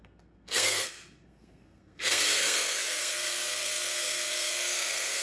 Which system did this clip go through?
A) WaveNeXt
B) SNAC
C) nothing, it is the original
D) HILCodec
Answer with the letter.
B